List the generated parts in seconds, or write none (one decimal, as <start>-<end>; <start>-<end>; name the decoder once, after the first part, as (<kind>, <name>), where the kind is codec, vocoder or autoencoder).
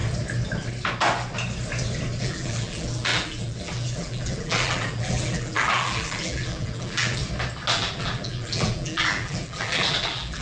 2.2-7.2 (vocoder, BigVGAN v2); 7.7-10.4